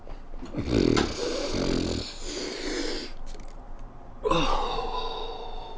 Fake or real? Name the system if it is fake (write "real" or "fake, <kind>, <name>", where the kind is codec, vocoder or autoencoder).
real